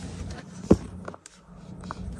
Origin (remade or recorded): recorded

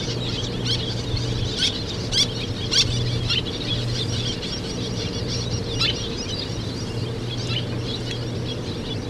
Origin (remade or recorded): recorded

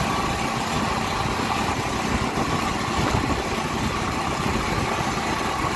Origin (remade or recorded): recorded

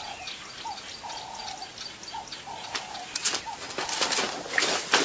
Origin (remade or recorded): recorded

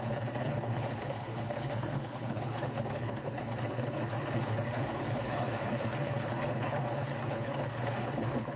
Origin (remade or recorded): remade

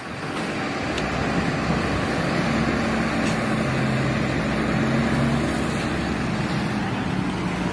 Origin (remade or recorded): recorded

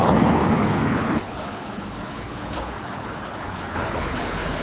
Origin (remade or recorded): remade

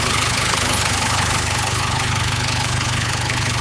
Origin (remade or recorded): remade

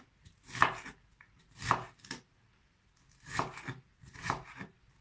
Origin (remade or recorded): recorded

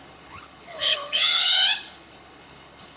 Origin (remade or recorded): remade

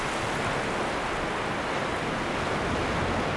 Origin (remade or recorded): recorded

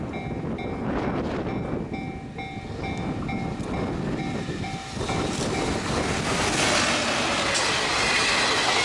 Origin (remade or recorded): recorded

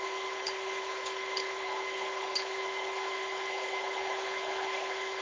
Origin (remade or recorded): remade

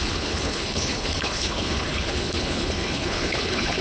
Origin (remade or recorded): remade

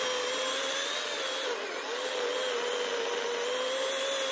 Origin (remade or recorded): recorded